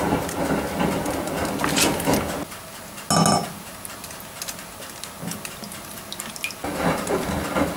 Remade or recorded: recorded